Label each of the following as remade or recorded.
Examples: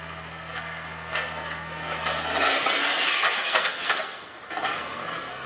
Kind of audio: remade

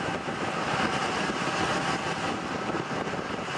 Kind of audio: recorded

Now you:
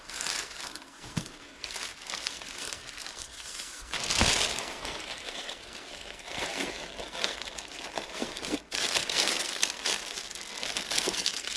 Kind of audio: remade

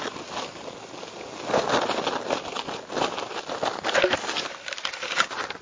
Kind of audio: recorded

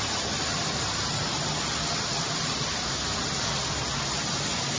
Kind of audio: recorded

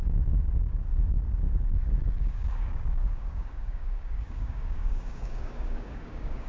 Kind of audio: remade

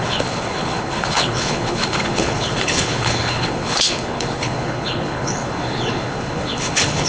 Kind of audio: remade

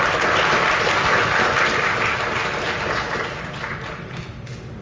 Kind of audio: recorded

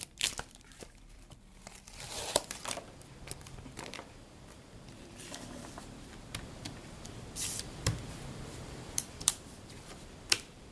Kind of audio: remade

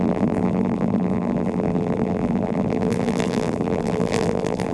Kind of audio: remade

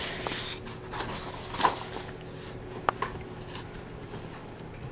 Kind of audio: recorded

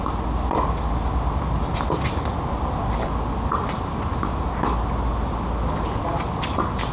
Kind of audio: recorded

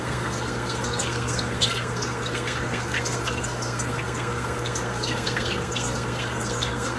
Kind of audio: remade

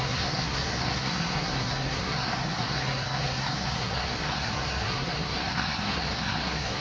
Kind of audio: remade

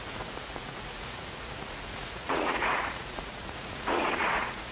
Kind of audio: remade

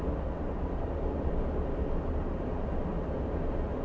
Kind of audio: recorded